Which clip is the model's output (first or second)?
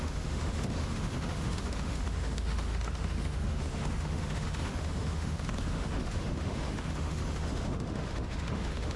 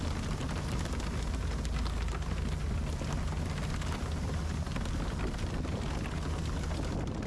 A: first